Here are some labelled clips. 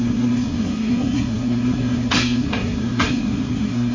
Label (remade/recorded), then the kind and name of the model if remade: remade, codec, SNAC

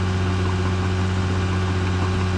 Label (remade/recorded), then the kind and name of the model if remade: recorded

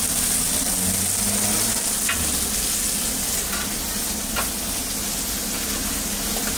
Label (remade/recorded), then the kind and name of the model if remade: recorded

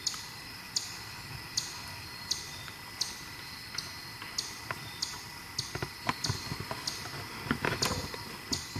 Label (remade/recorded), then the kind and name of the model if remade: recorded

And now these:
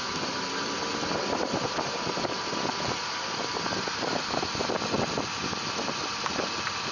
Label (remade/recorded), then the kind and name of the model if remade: recorded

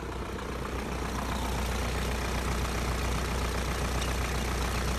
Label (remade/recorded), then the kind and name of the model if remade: recorded